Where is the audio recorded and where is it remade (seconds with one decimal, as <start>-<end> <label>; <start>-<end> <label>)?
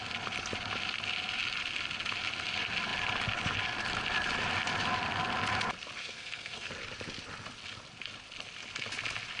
0.0-6.0 recorded; 6.0-6.7 remade; 6.7-9.4 recorded